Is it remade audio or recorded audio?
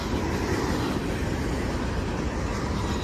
recorded